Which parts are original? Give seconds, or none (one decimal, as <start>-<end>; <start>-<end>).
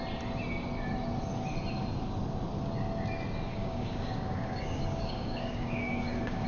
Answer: 0.0-3.5